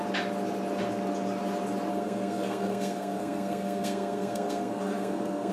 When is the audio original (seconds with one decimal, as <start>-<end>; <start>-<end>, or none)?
0.0-1.9

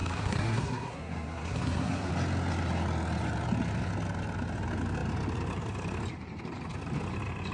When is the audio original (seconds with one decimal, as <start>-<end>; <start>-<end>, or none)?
2.1-7.5

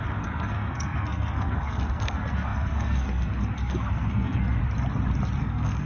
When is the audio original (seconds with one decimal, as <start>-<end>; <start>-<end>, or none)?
4.6-5.4

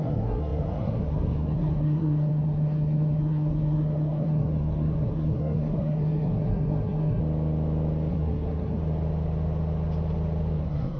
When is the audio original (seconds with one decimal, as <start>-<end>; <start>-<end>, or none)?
7.2-8.1; 8.8-10.6